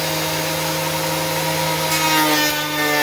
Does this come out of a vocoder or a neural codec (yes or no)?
no